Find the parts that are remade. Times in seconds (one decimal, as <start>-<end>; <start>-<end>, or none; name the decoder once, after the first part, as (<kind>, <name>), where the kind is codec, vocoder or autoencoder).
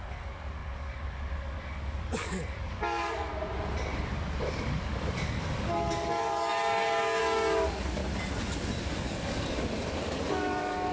0.0-3.3 (codec, DAC); 4.1-8.0; 8.8-10.9